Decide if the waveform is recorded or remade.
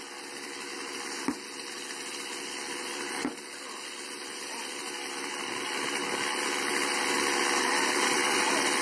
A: recorded